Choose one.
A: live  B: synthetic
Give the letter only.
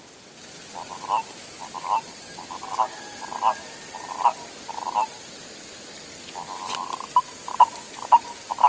A